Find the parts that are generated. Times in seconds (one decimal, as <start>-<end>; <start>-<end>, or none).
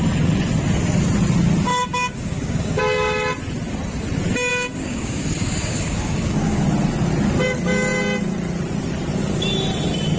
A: 1.7-2.8; 4.5-6.6